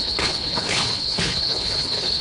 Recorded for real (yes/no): no